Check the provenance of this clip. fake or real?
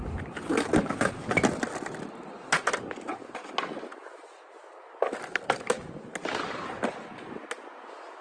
real